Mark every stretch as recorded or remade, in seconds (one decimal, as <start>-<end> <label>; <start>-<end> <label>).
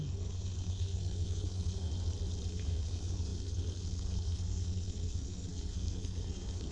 0.0-1.9 remade; 1.9-2.5 recorded; 2.5-6.7 remade